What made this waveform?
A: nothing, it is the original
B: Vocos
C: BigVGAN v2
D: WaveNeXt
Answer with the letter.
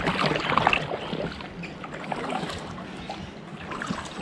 A